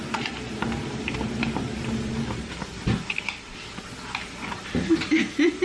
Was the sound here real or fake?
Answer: real